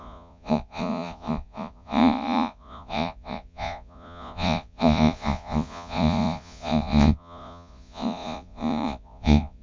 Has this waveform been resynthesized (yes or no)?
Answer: yes